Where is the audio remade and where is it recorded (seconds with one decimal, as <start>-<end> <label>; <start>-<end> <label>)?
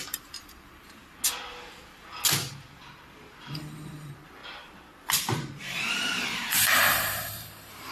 0.0-1.0 remade; 1.0-2.8 recorded; 2.8-4.4 remade; 4.4-5.6 recorded; 5.6-7.9 remade